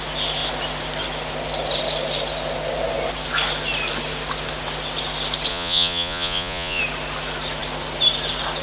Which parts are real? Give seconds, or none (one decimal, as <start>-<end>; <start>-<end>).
0.0-5.5; 6.8-8.6